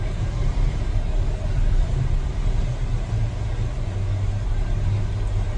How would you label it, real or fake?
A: real